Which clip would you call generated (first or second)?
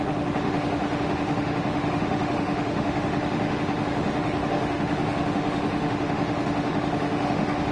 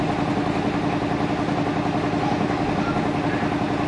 first